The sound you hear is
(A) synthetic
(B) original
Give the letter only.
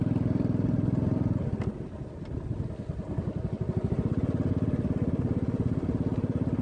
B